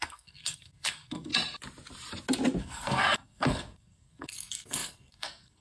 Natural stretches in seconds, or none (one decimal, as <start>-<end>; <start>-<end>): 1.3-2.6

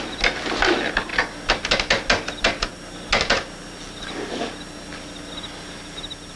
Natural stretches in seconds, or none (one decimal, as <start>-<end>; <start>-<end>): 0.0-6.4